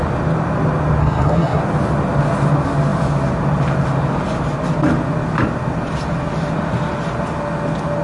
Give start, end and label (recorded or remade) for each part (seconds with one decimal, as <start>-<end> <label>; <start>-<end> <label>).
0.0-1.0 recorded; 1.0-1.6 remade; 1.6-8.0 recorded